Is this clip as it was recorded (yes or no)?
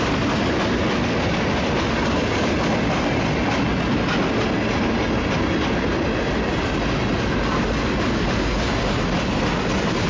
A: yes